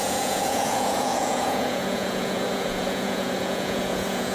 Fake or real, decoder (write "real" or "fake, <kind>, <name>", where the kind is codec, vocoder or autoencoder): fake, vocoder, Vocos